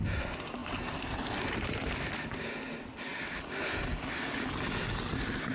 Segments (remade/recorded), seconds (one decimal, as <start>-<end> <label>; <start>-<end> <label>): 0.0-0.6 recorded; 0.6-2.1 remade; 2.1-5.5 recorded